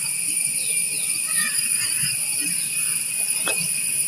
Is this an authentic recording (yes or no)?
yes